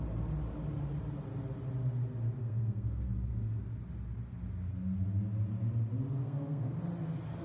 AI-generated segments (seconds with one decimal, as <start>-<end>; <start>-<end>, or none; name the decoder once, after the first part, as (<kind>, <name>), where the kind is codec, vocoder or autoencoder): 2.4-3.6 (codec, SNAC); 6.2-6.8